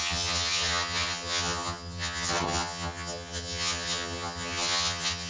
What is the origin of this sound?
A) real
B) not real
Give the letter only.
B